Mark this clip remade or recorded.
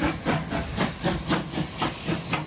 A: recorded